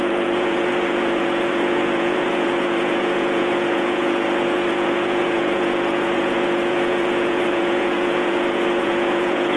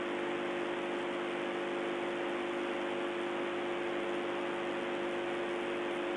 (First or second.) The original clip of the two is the second